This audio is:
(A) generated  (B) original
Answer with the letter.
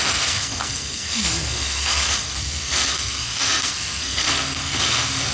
A